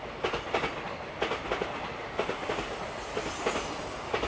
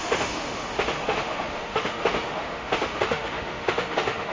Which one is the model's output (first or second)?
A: second